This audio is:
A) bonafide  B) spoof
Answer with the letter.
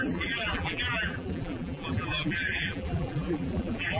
B